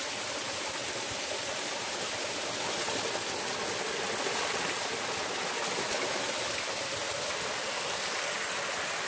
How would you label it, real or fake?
real